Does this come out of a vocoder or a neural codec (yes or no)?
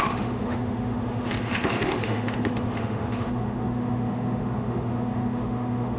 yes